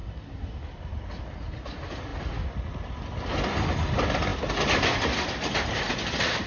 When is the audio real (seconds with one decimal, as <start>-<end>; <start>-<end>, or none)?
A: 0.0-6.5